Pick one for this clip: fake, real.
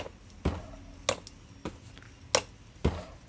real